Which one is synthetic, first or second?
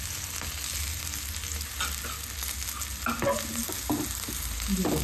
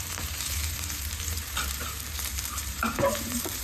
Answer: second